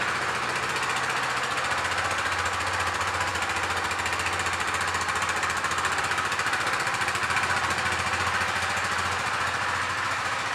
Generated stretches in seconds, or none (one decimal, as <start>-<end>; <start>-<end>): none